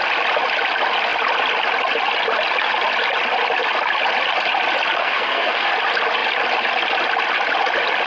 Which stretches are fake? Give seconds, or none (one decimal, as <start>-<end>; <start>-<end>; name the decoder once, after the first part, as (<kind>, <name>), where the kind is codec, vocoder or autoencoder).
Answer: 5.0-5.7 (codec, SNAC)